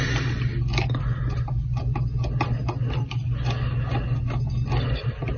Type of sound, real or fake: real